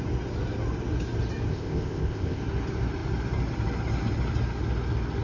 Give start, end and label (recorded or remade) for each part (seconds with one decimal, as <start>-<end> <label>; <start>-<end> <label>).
0.0-1.5 recorded; 1.5-2.4 remade; 2.4-5.2 recorded